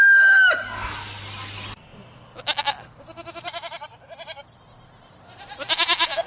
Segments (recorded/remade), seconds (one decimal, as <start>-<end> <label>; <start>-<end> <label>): 0.0-6.3 recorded